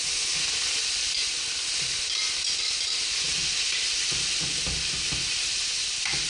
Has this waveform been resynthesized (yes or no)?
no